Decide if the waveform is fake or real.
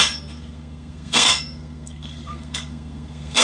fake